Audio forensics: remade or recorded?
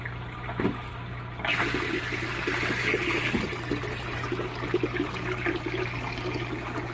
recorded